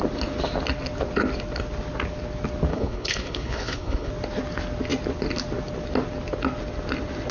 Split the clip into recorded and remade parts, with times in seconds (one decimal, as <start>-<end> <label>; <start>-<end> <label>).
0.0-2.7 recorded; 2.7-4.1 remade; 4.1-7.3 recorded